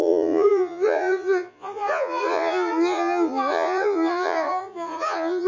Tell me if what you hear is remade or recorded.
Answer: remade